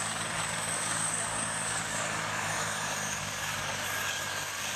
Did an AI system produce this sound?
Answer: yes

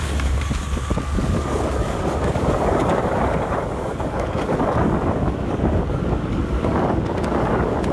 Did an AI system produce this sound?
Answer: yes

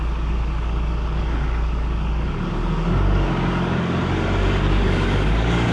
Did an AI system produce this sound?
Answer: yes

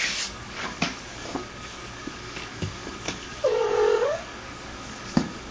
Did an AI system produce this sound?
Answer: yes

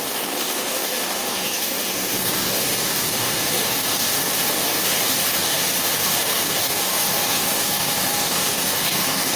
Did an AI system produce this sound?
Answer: yes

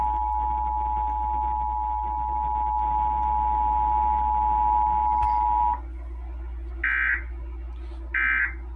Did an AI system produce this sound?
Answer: no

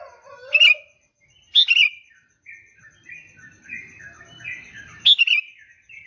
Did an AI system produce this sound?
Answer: no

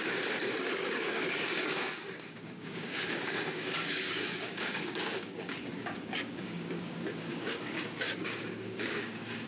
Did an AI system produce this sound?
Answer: yes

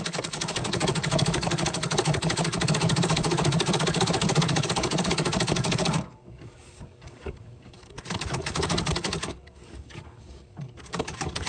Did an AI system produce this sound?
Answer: yes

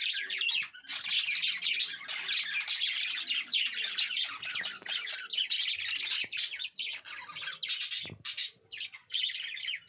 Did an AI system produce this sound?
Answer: no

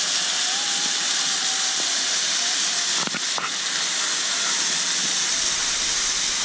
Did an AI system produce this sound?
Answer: no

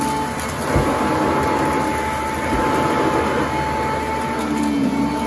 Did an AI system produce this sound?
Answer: no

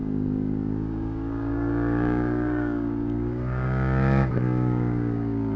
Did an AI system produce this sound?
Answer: yes